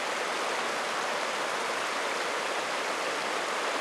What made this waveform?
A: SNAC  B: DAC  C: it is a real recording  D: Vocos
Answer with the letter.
C